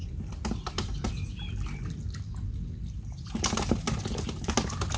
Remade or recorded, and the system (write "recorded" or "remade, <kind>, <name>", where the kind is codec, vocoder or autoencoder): recorded